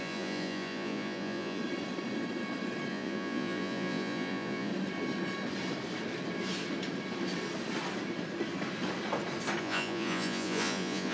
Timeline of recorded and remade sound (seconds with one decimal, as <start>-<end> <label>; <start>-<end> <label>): 0.0-1.6 remade; 1.6-2.9 recorded; 2.9-4.7 remade; 4.7-9.6 recorded; 9.6-11.1 remade

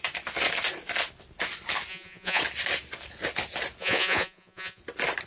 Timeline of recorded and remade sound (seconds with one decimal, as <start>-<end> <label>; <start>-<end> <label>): 0.0-1.9 recorded; 1.9-2.4 remade; 2.4-3.8 recorded; 3.8-4.8 remade; 4.8-5.3 recorded

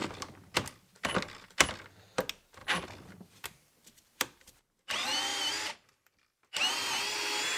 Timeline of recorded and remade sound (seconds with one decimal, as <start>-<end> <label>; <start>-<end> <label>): 0.0-2.6 recorded; 2.6-4.6 remade; 4.6-5.3 recorded; 5.3-6.4 remade; 6.4-7.6 recorded

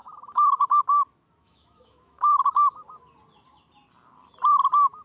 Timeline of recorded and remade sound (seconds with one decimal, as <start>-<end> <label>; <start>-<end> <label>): 0.0-0.8 remade; 0.8-1.4 recorded; 1.4-2.8 remade; 2.8-5.0 recorded

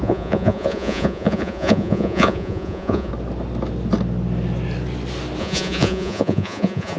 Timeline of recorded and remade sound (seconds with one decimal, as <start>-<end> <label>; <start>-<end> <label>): 0.0-3.1 remade; 3.1-5.4 recorded; 5.4-7.0 remade

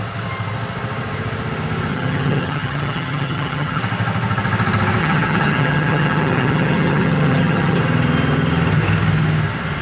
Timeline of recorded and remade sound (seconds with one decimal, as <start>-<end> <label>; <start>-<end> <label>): 0.0-1.9 recorded; 1.9-3.8 remade; 3.8-5.0 recorded; 5.0-7.8 remade; 7.8-9.8 recorded